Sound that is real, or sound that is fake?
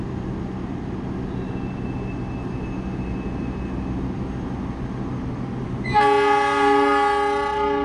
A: real